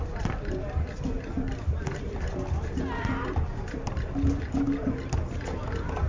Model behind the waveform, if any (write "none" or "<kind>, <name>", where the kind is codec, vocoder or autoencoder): none